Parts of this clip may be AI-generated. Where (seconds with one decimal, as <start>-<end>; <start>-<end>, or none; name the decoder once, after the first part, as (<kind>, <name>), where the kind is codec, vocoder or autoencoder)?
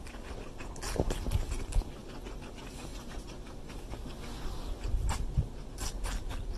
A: none